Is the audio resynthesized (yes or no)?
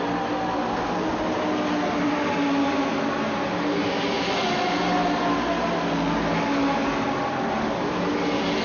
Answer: no